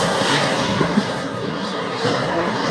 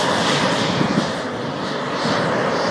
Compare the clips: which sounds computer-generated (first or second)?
first